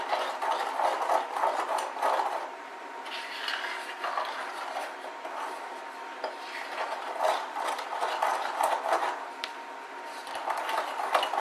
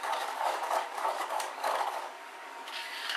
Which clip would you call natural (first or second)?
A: first